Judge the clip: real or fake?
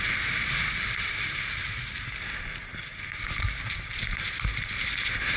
fake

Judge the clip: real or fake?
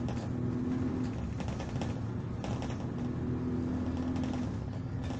real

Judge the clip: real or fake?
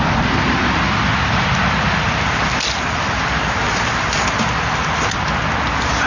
real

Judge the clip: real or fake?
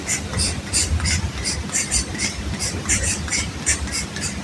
fake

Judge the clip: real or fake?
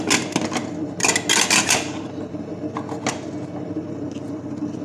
real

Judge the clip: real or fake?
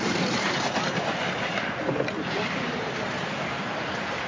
fake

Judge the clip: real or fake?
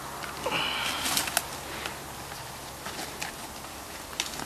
real